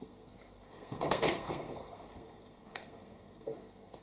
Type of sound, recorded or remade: remade